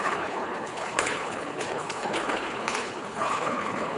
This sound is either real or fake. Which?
fake